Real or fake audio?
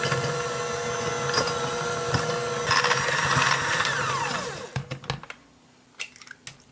real